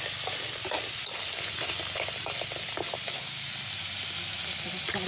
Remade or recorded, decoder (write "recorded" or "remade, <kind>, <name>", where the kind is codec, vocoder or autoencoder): recorded